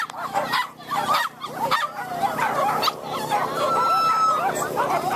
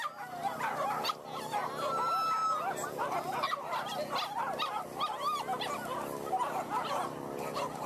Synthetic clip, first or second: first